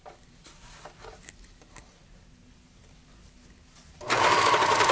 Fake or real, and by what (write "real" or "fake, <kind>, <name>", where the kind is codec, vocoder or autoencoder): real